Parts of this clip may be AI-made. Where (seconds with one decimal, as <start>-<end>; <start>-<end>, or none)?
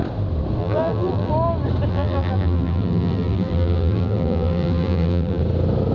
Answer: 0.6-1.3; 1.9-5.4